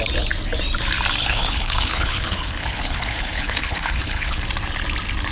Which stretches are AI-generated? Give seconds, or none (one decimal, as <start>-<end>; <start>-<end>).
1.2-4.4